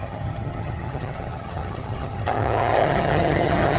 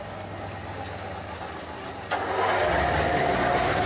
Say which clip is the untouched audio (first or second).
second